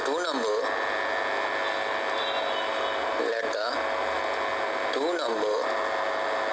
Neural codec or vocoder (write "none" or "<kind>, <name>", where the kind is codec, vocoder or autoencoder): none